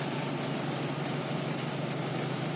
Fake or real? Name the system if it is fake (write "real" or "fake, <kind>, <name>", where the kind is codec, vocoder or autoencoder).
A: real